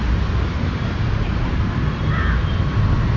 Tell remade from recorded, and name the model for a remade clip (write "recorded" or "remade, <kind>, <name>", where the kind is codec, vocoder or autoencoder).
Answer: recorded